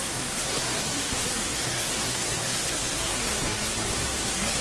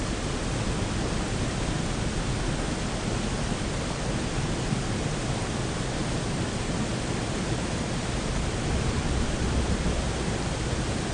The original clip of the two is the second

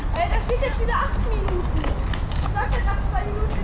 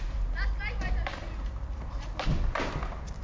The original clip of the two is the first